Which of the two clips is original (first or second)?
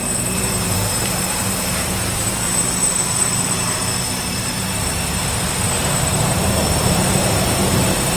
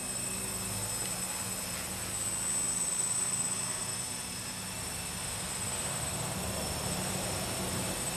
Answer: second